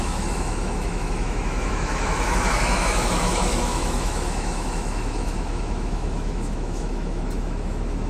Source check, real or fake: fake